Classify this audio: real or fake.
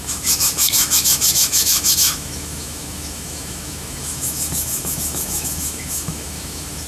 fake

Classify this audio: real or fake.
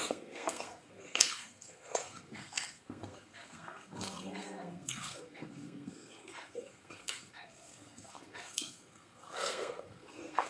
fake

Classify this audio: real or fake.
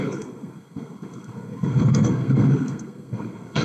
fake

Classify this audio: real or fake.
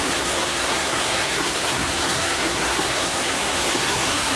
fake